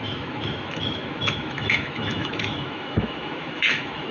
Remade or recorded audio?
remade